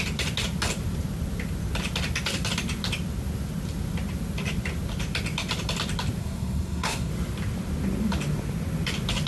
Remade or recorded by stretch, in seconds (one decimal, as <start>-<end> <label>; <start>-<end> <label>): 0.0-6.2 recorded; 6.2-7.1 remade; 7.1-9.3 recorded